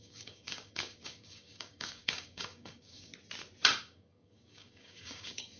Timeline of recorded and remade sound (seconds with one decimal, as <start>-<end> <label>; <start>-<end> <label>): 0.0-3.1 remade; 3.1-3.8 recorded; 3.8-5.6 remade